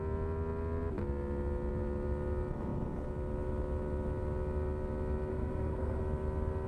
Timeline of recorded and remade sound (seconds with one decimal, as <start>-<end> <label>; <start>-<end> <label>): 0.0-5.3 recorded; 5.3-6.0 remade; 6.0-6.7 recorded